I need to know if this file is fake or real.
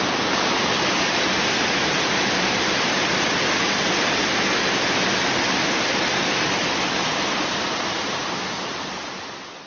real